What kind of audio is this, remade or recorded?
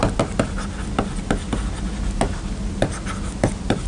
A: recorded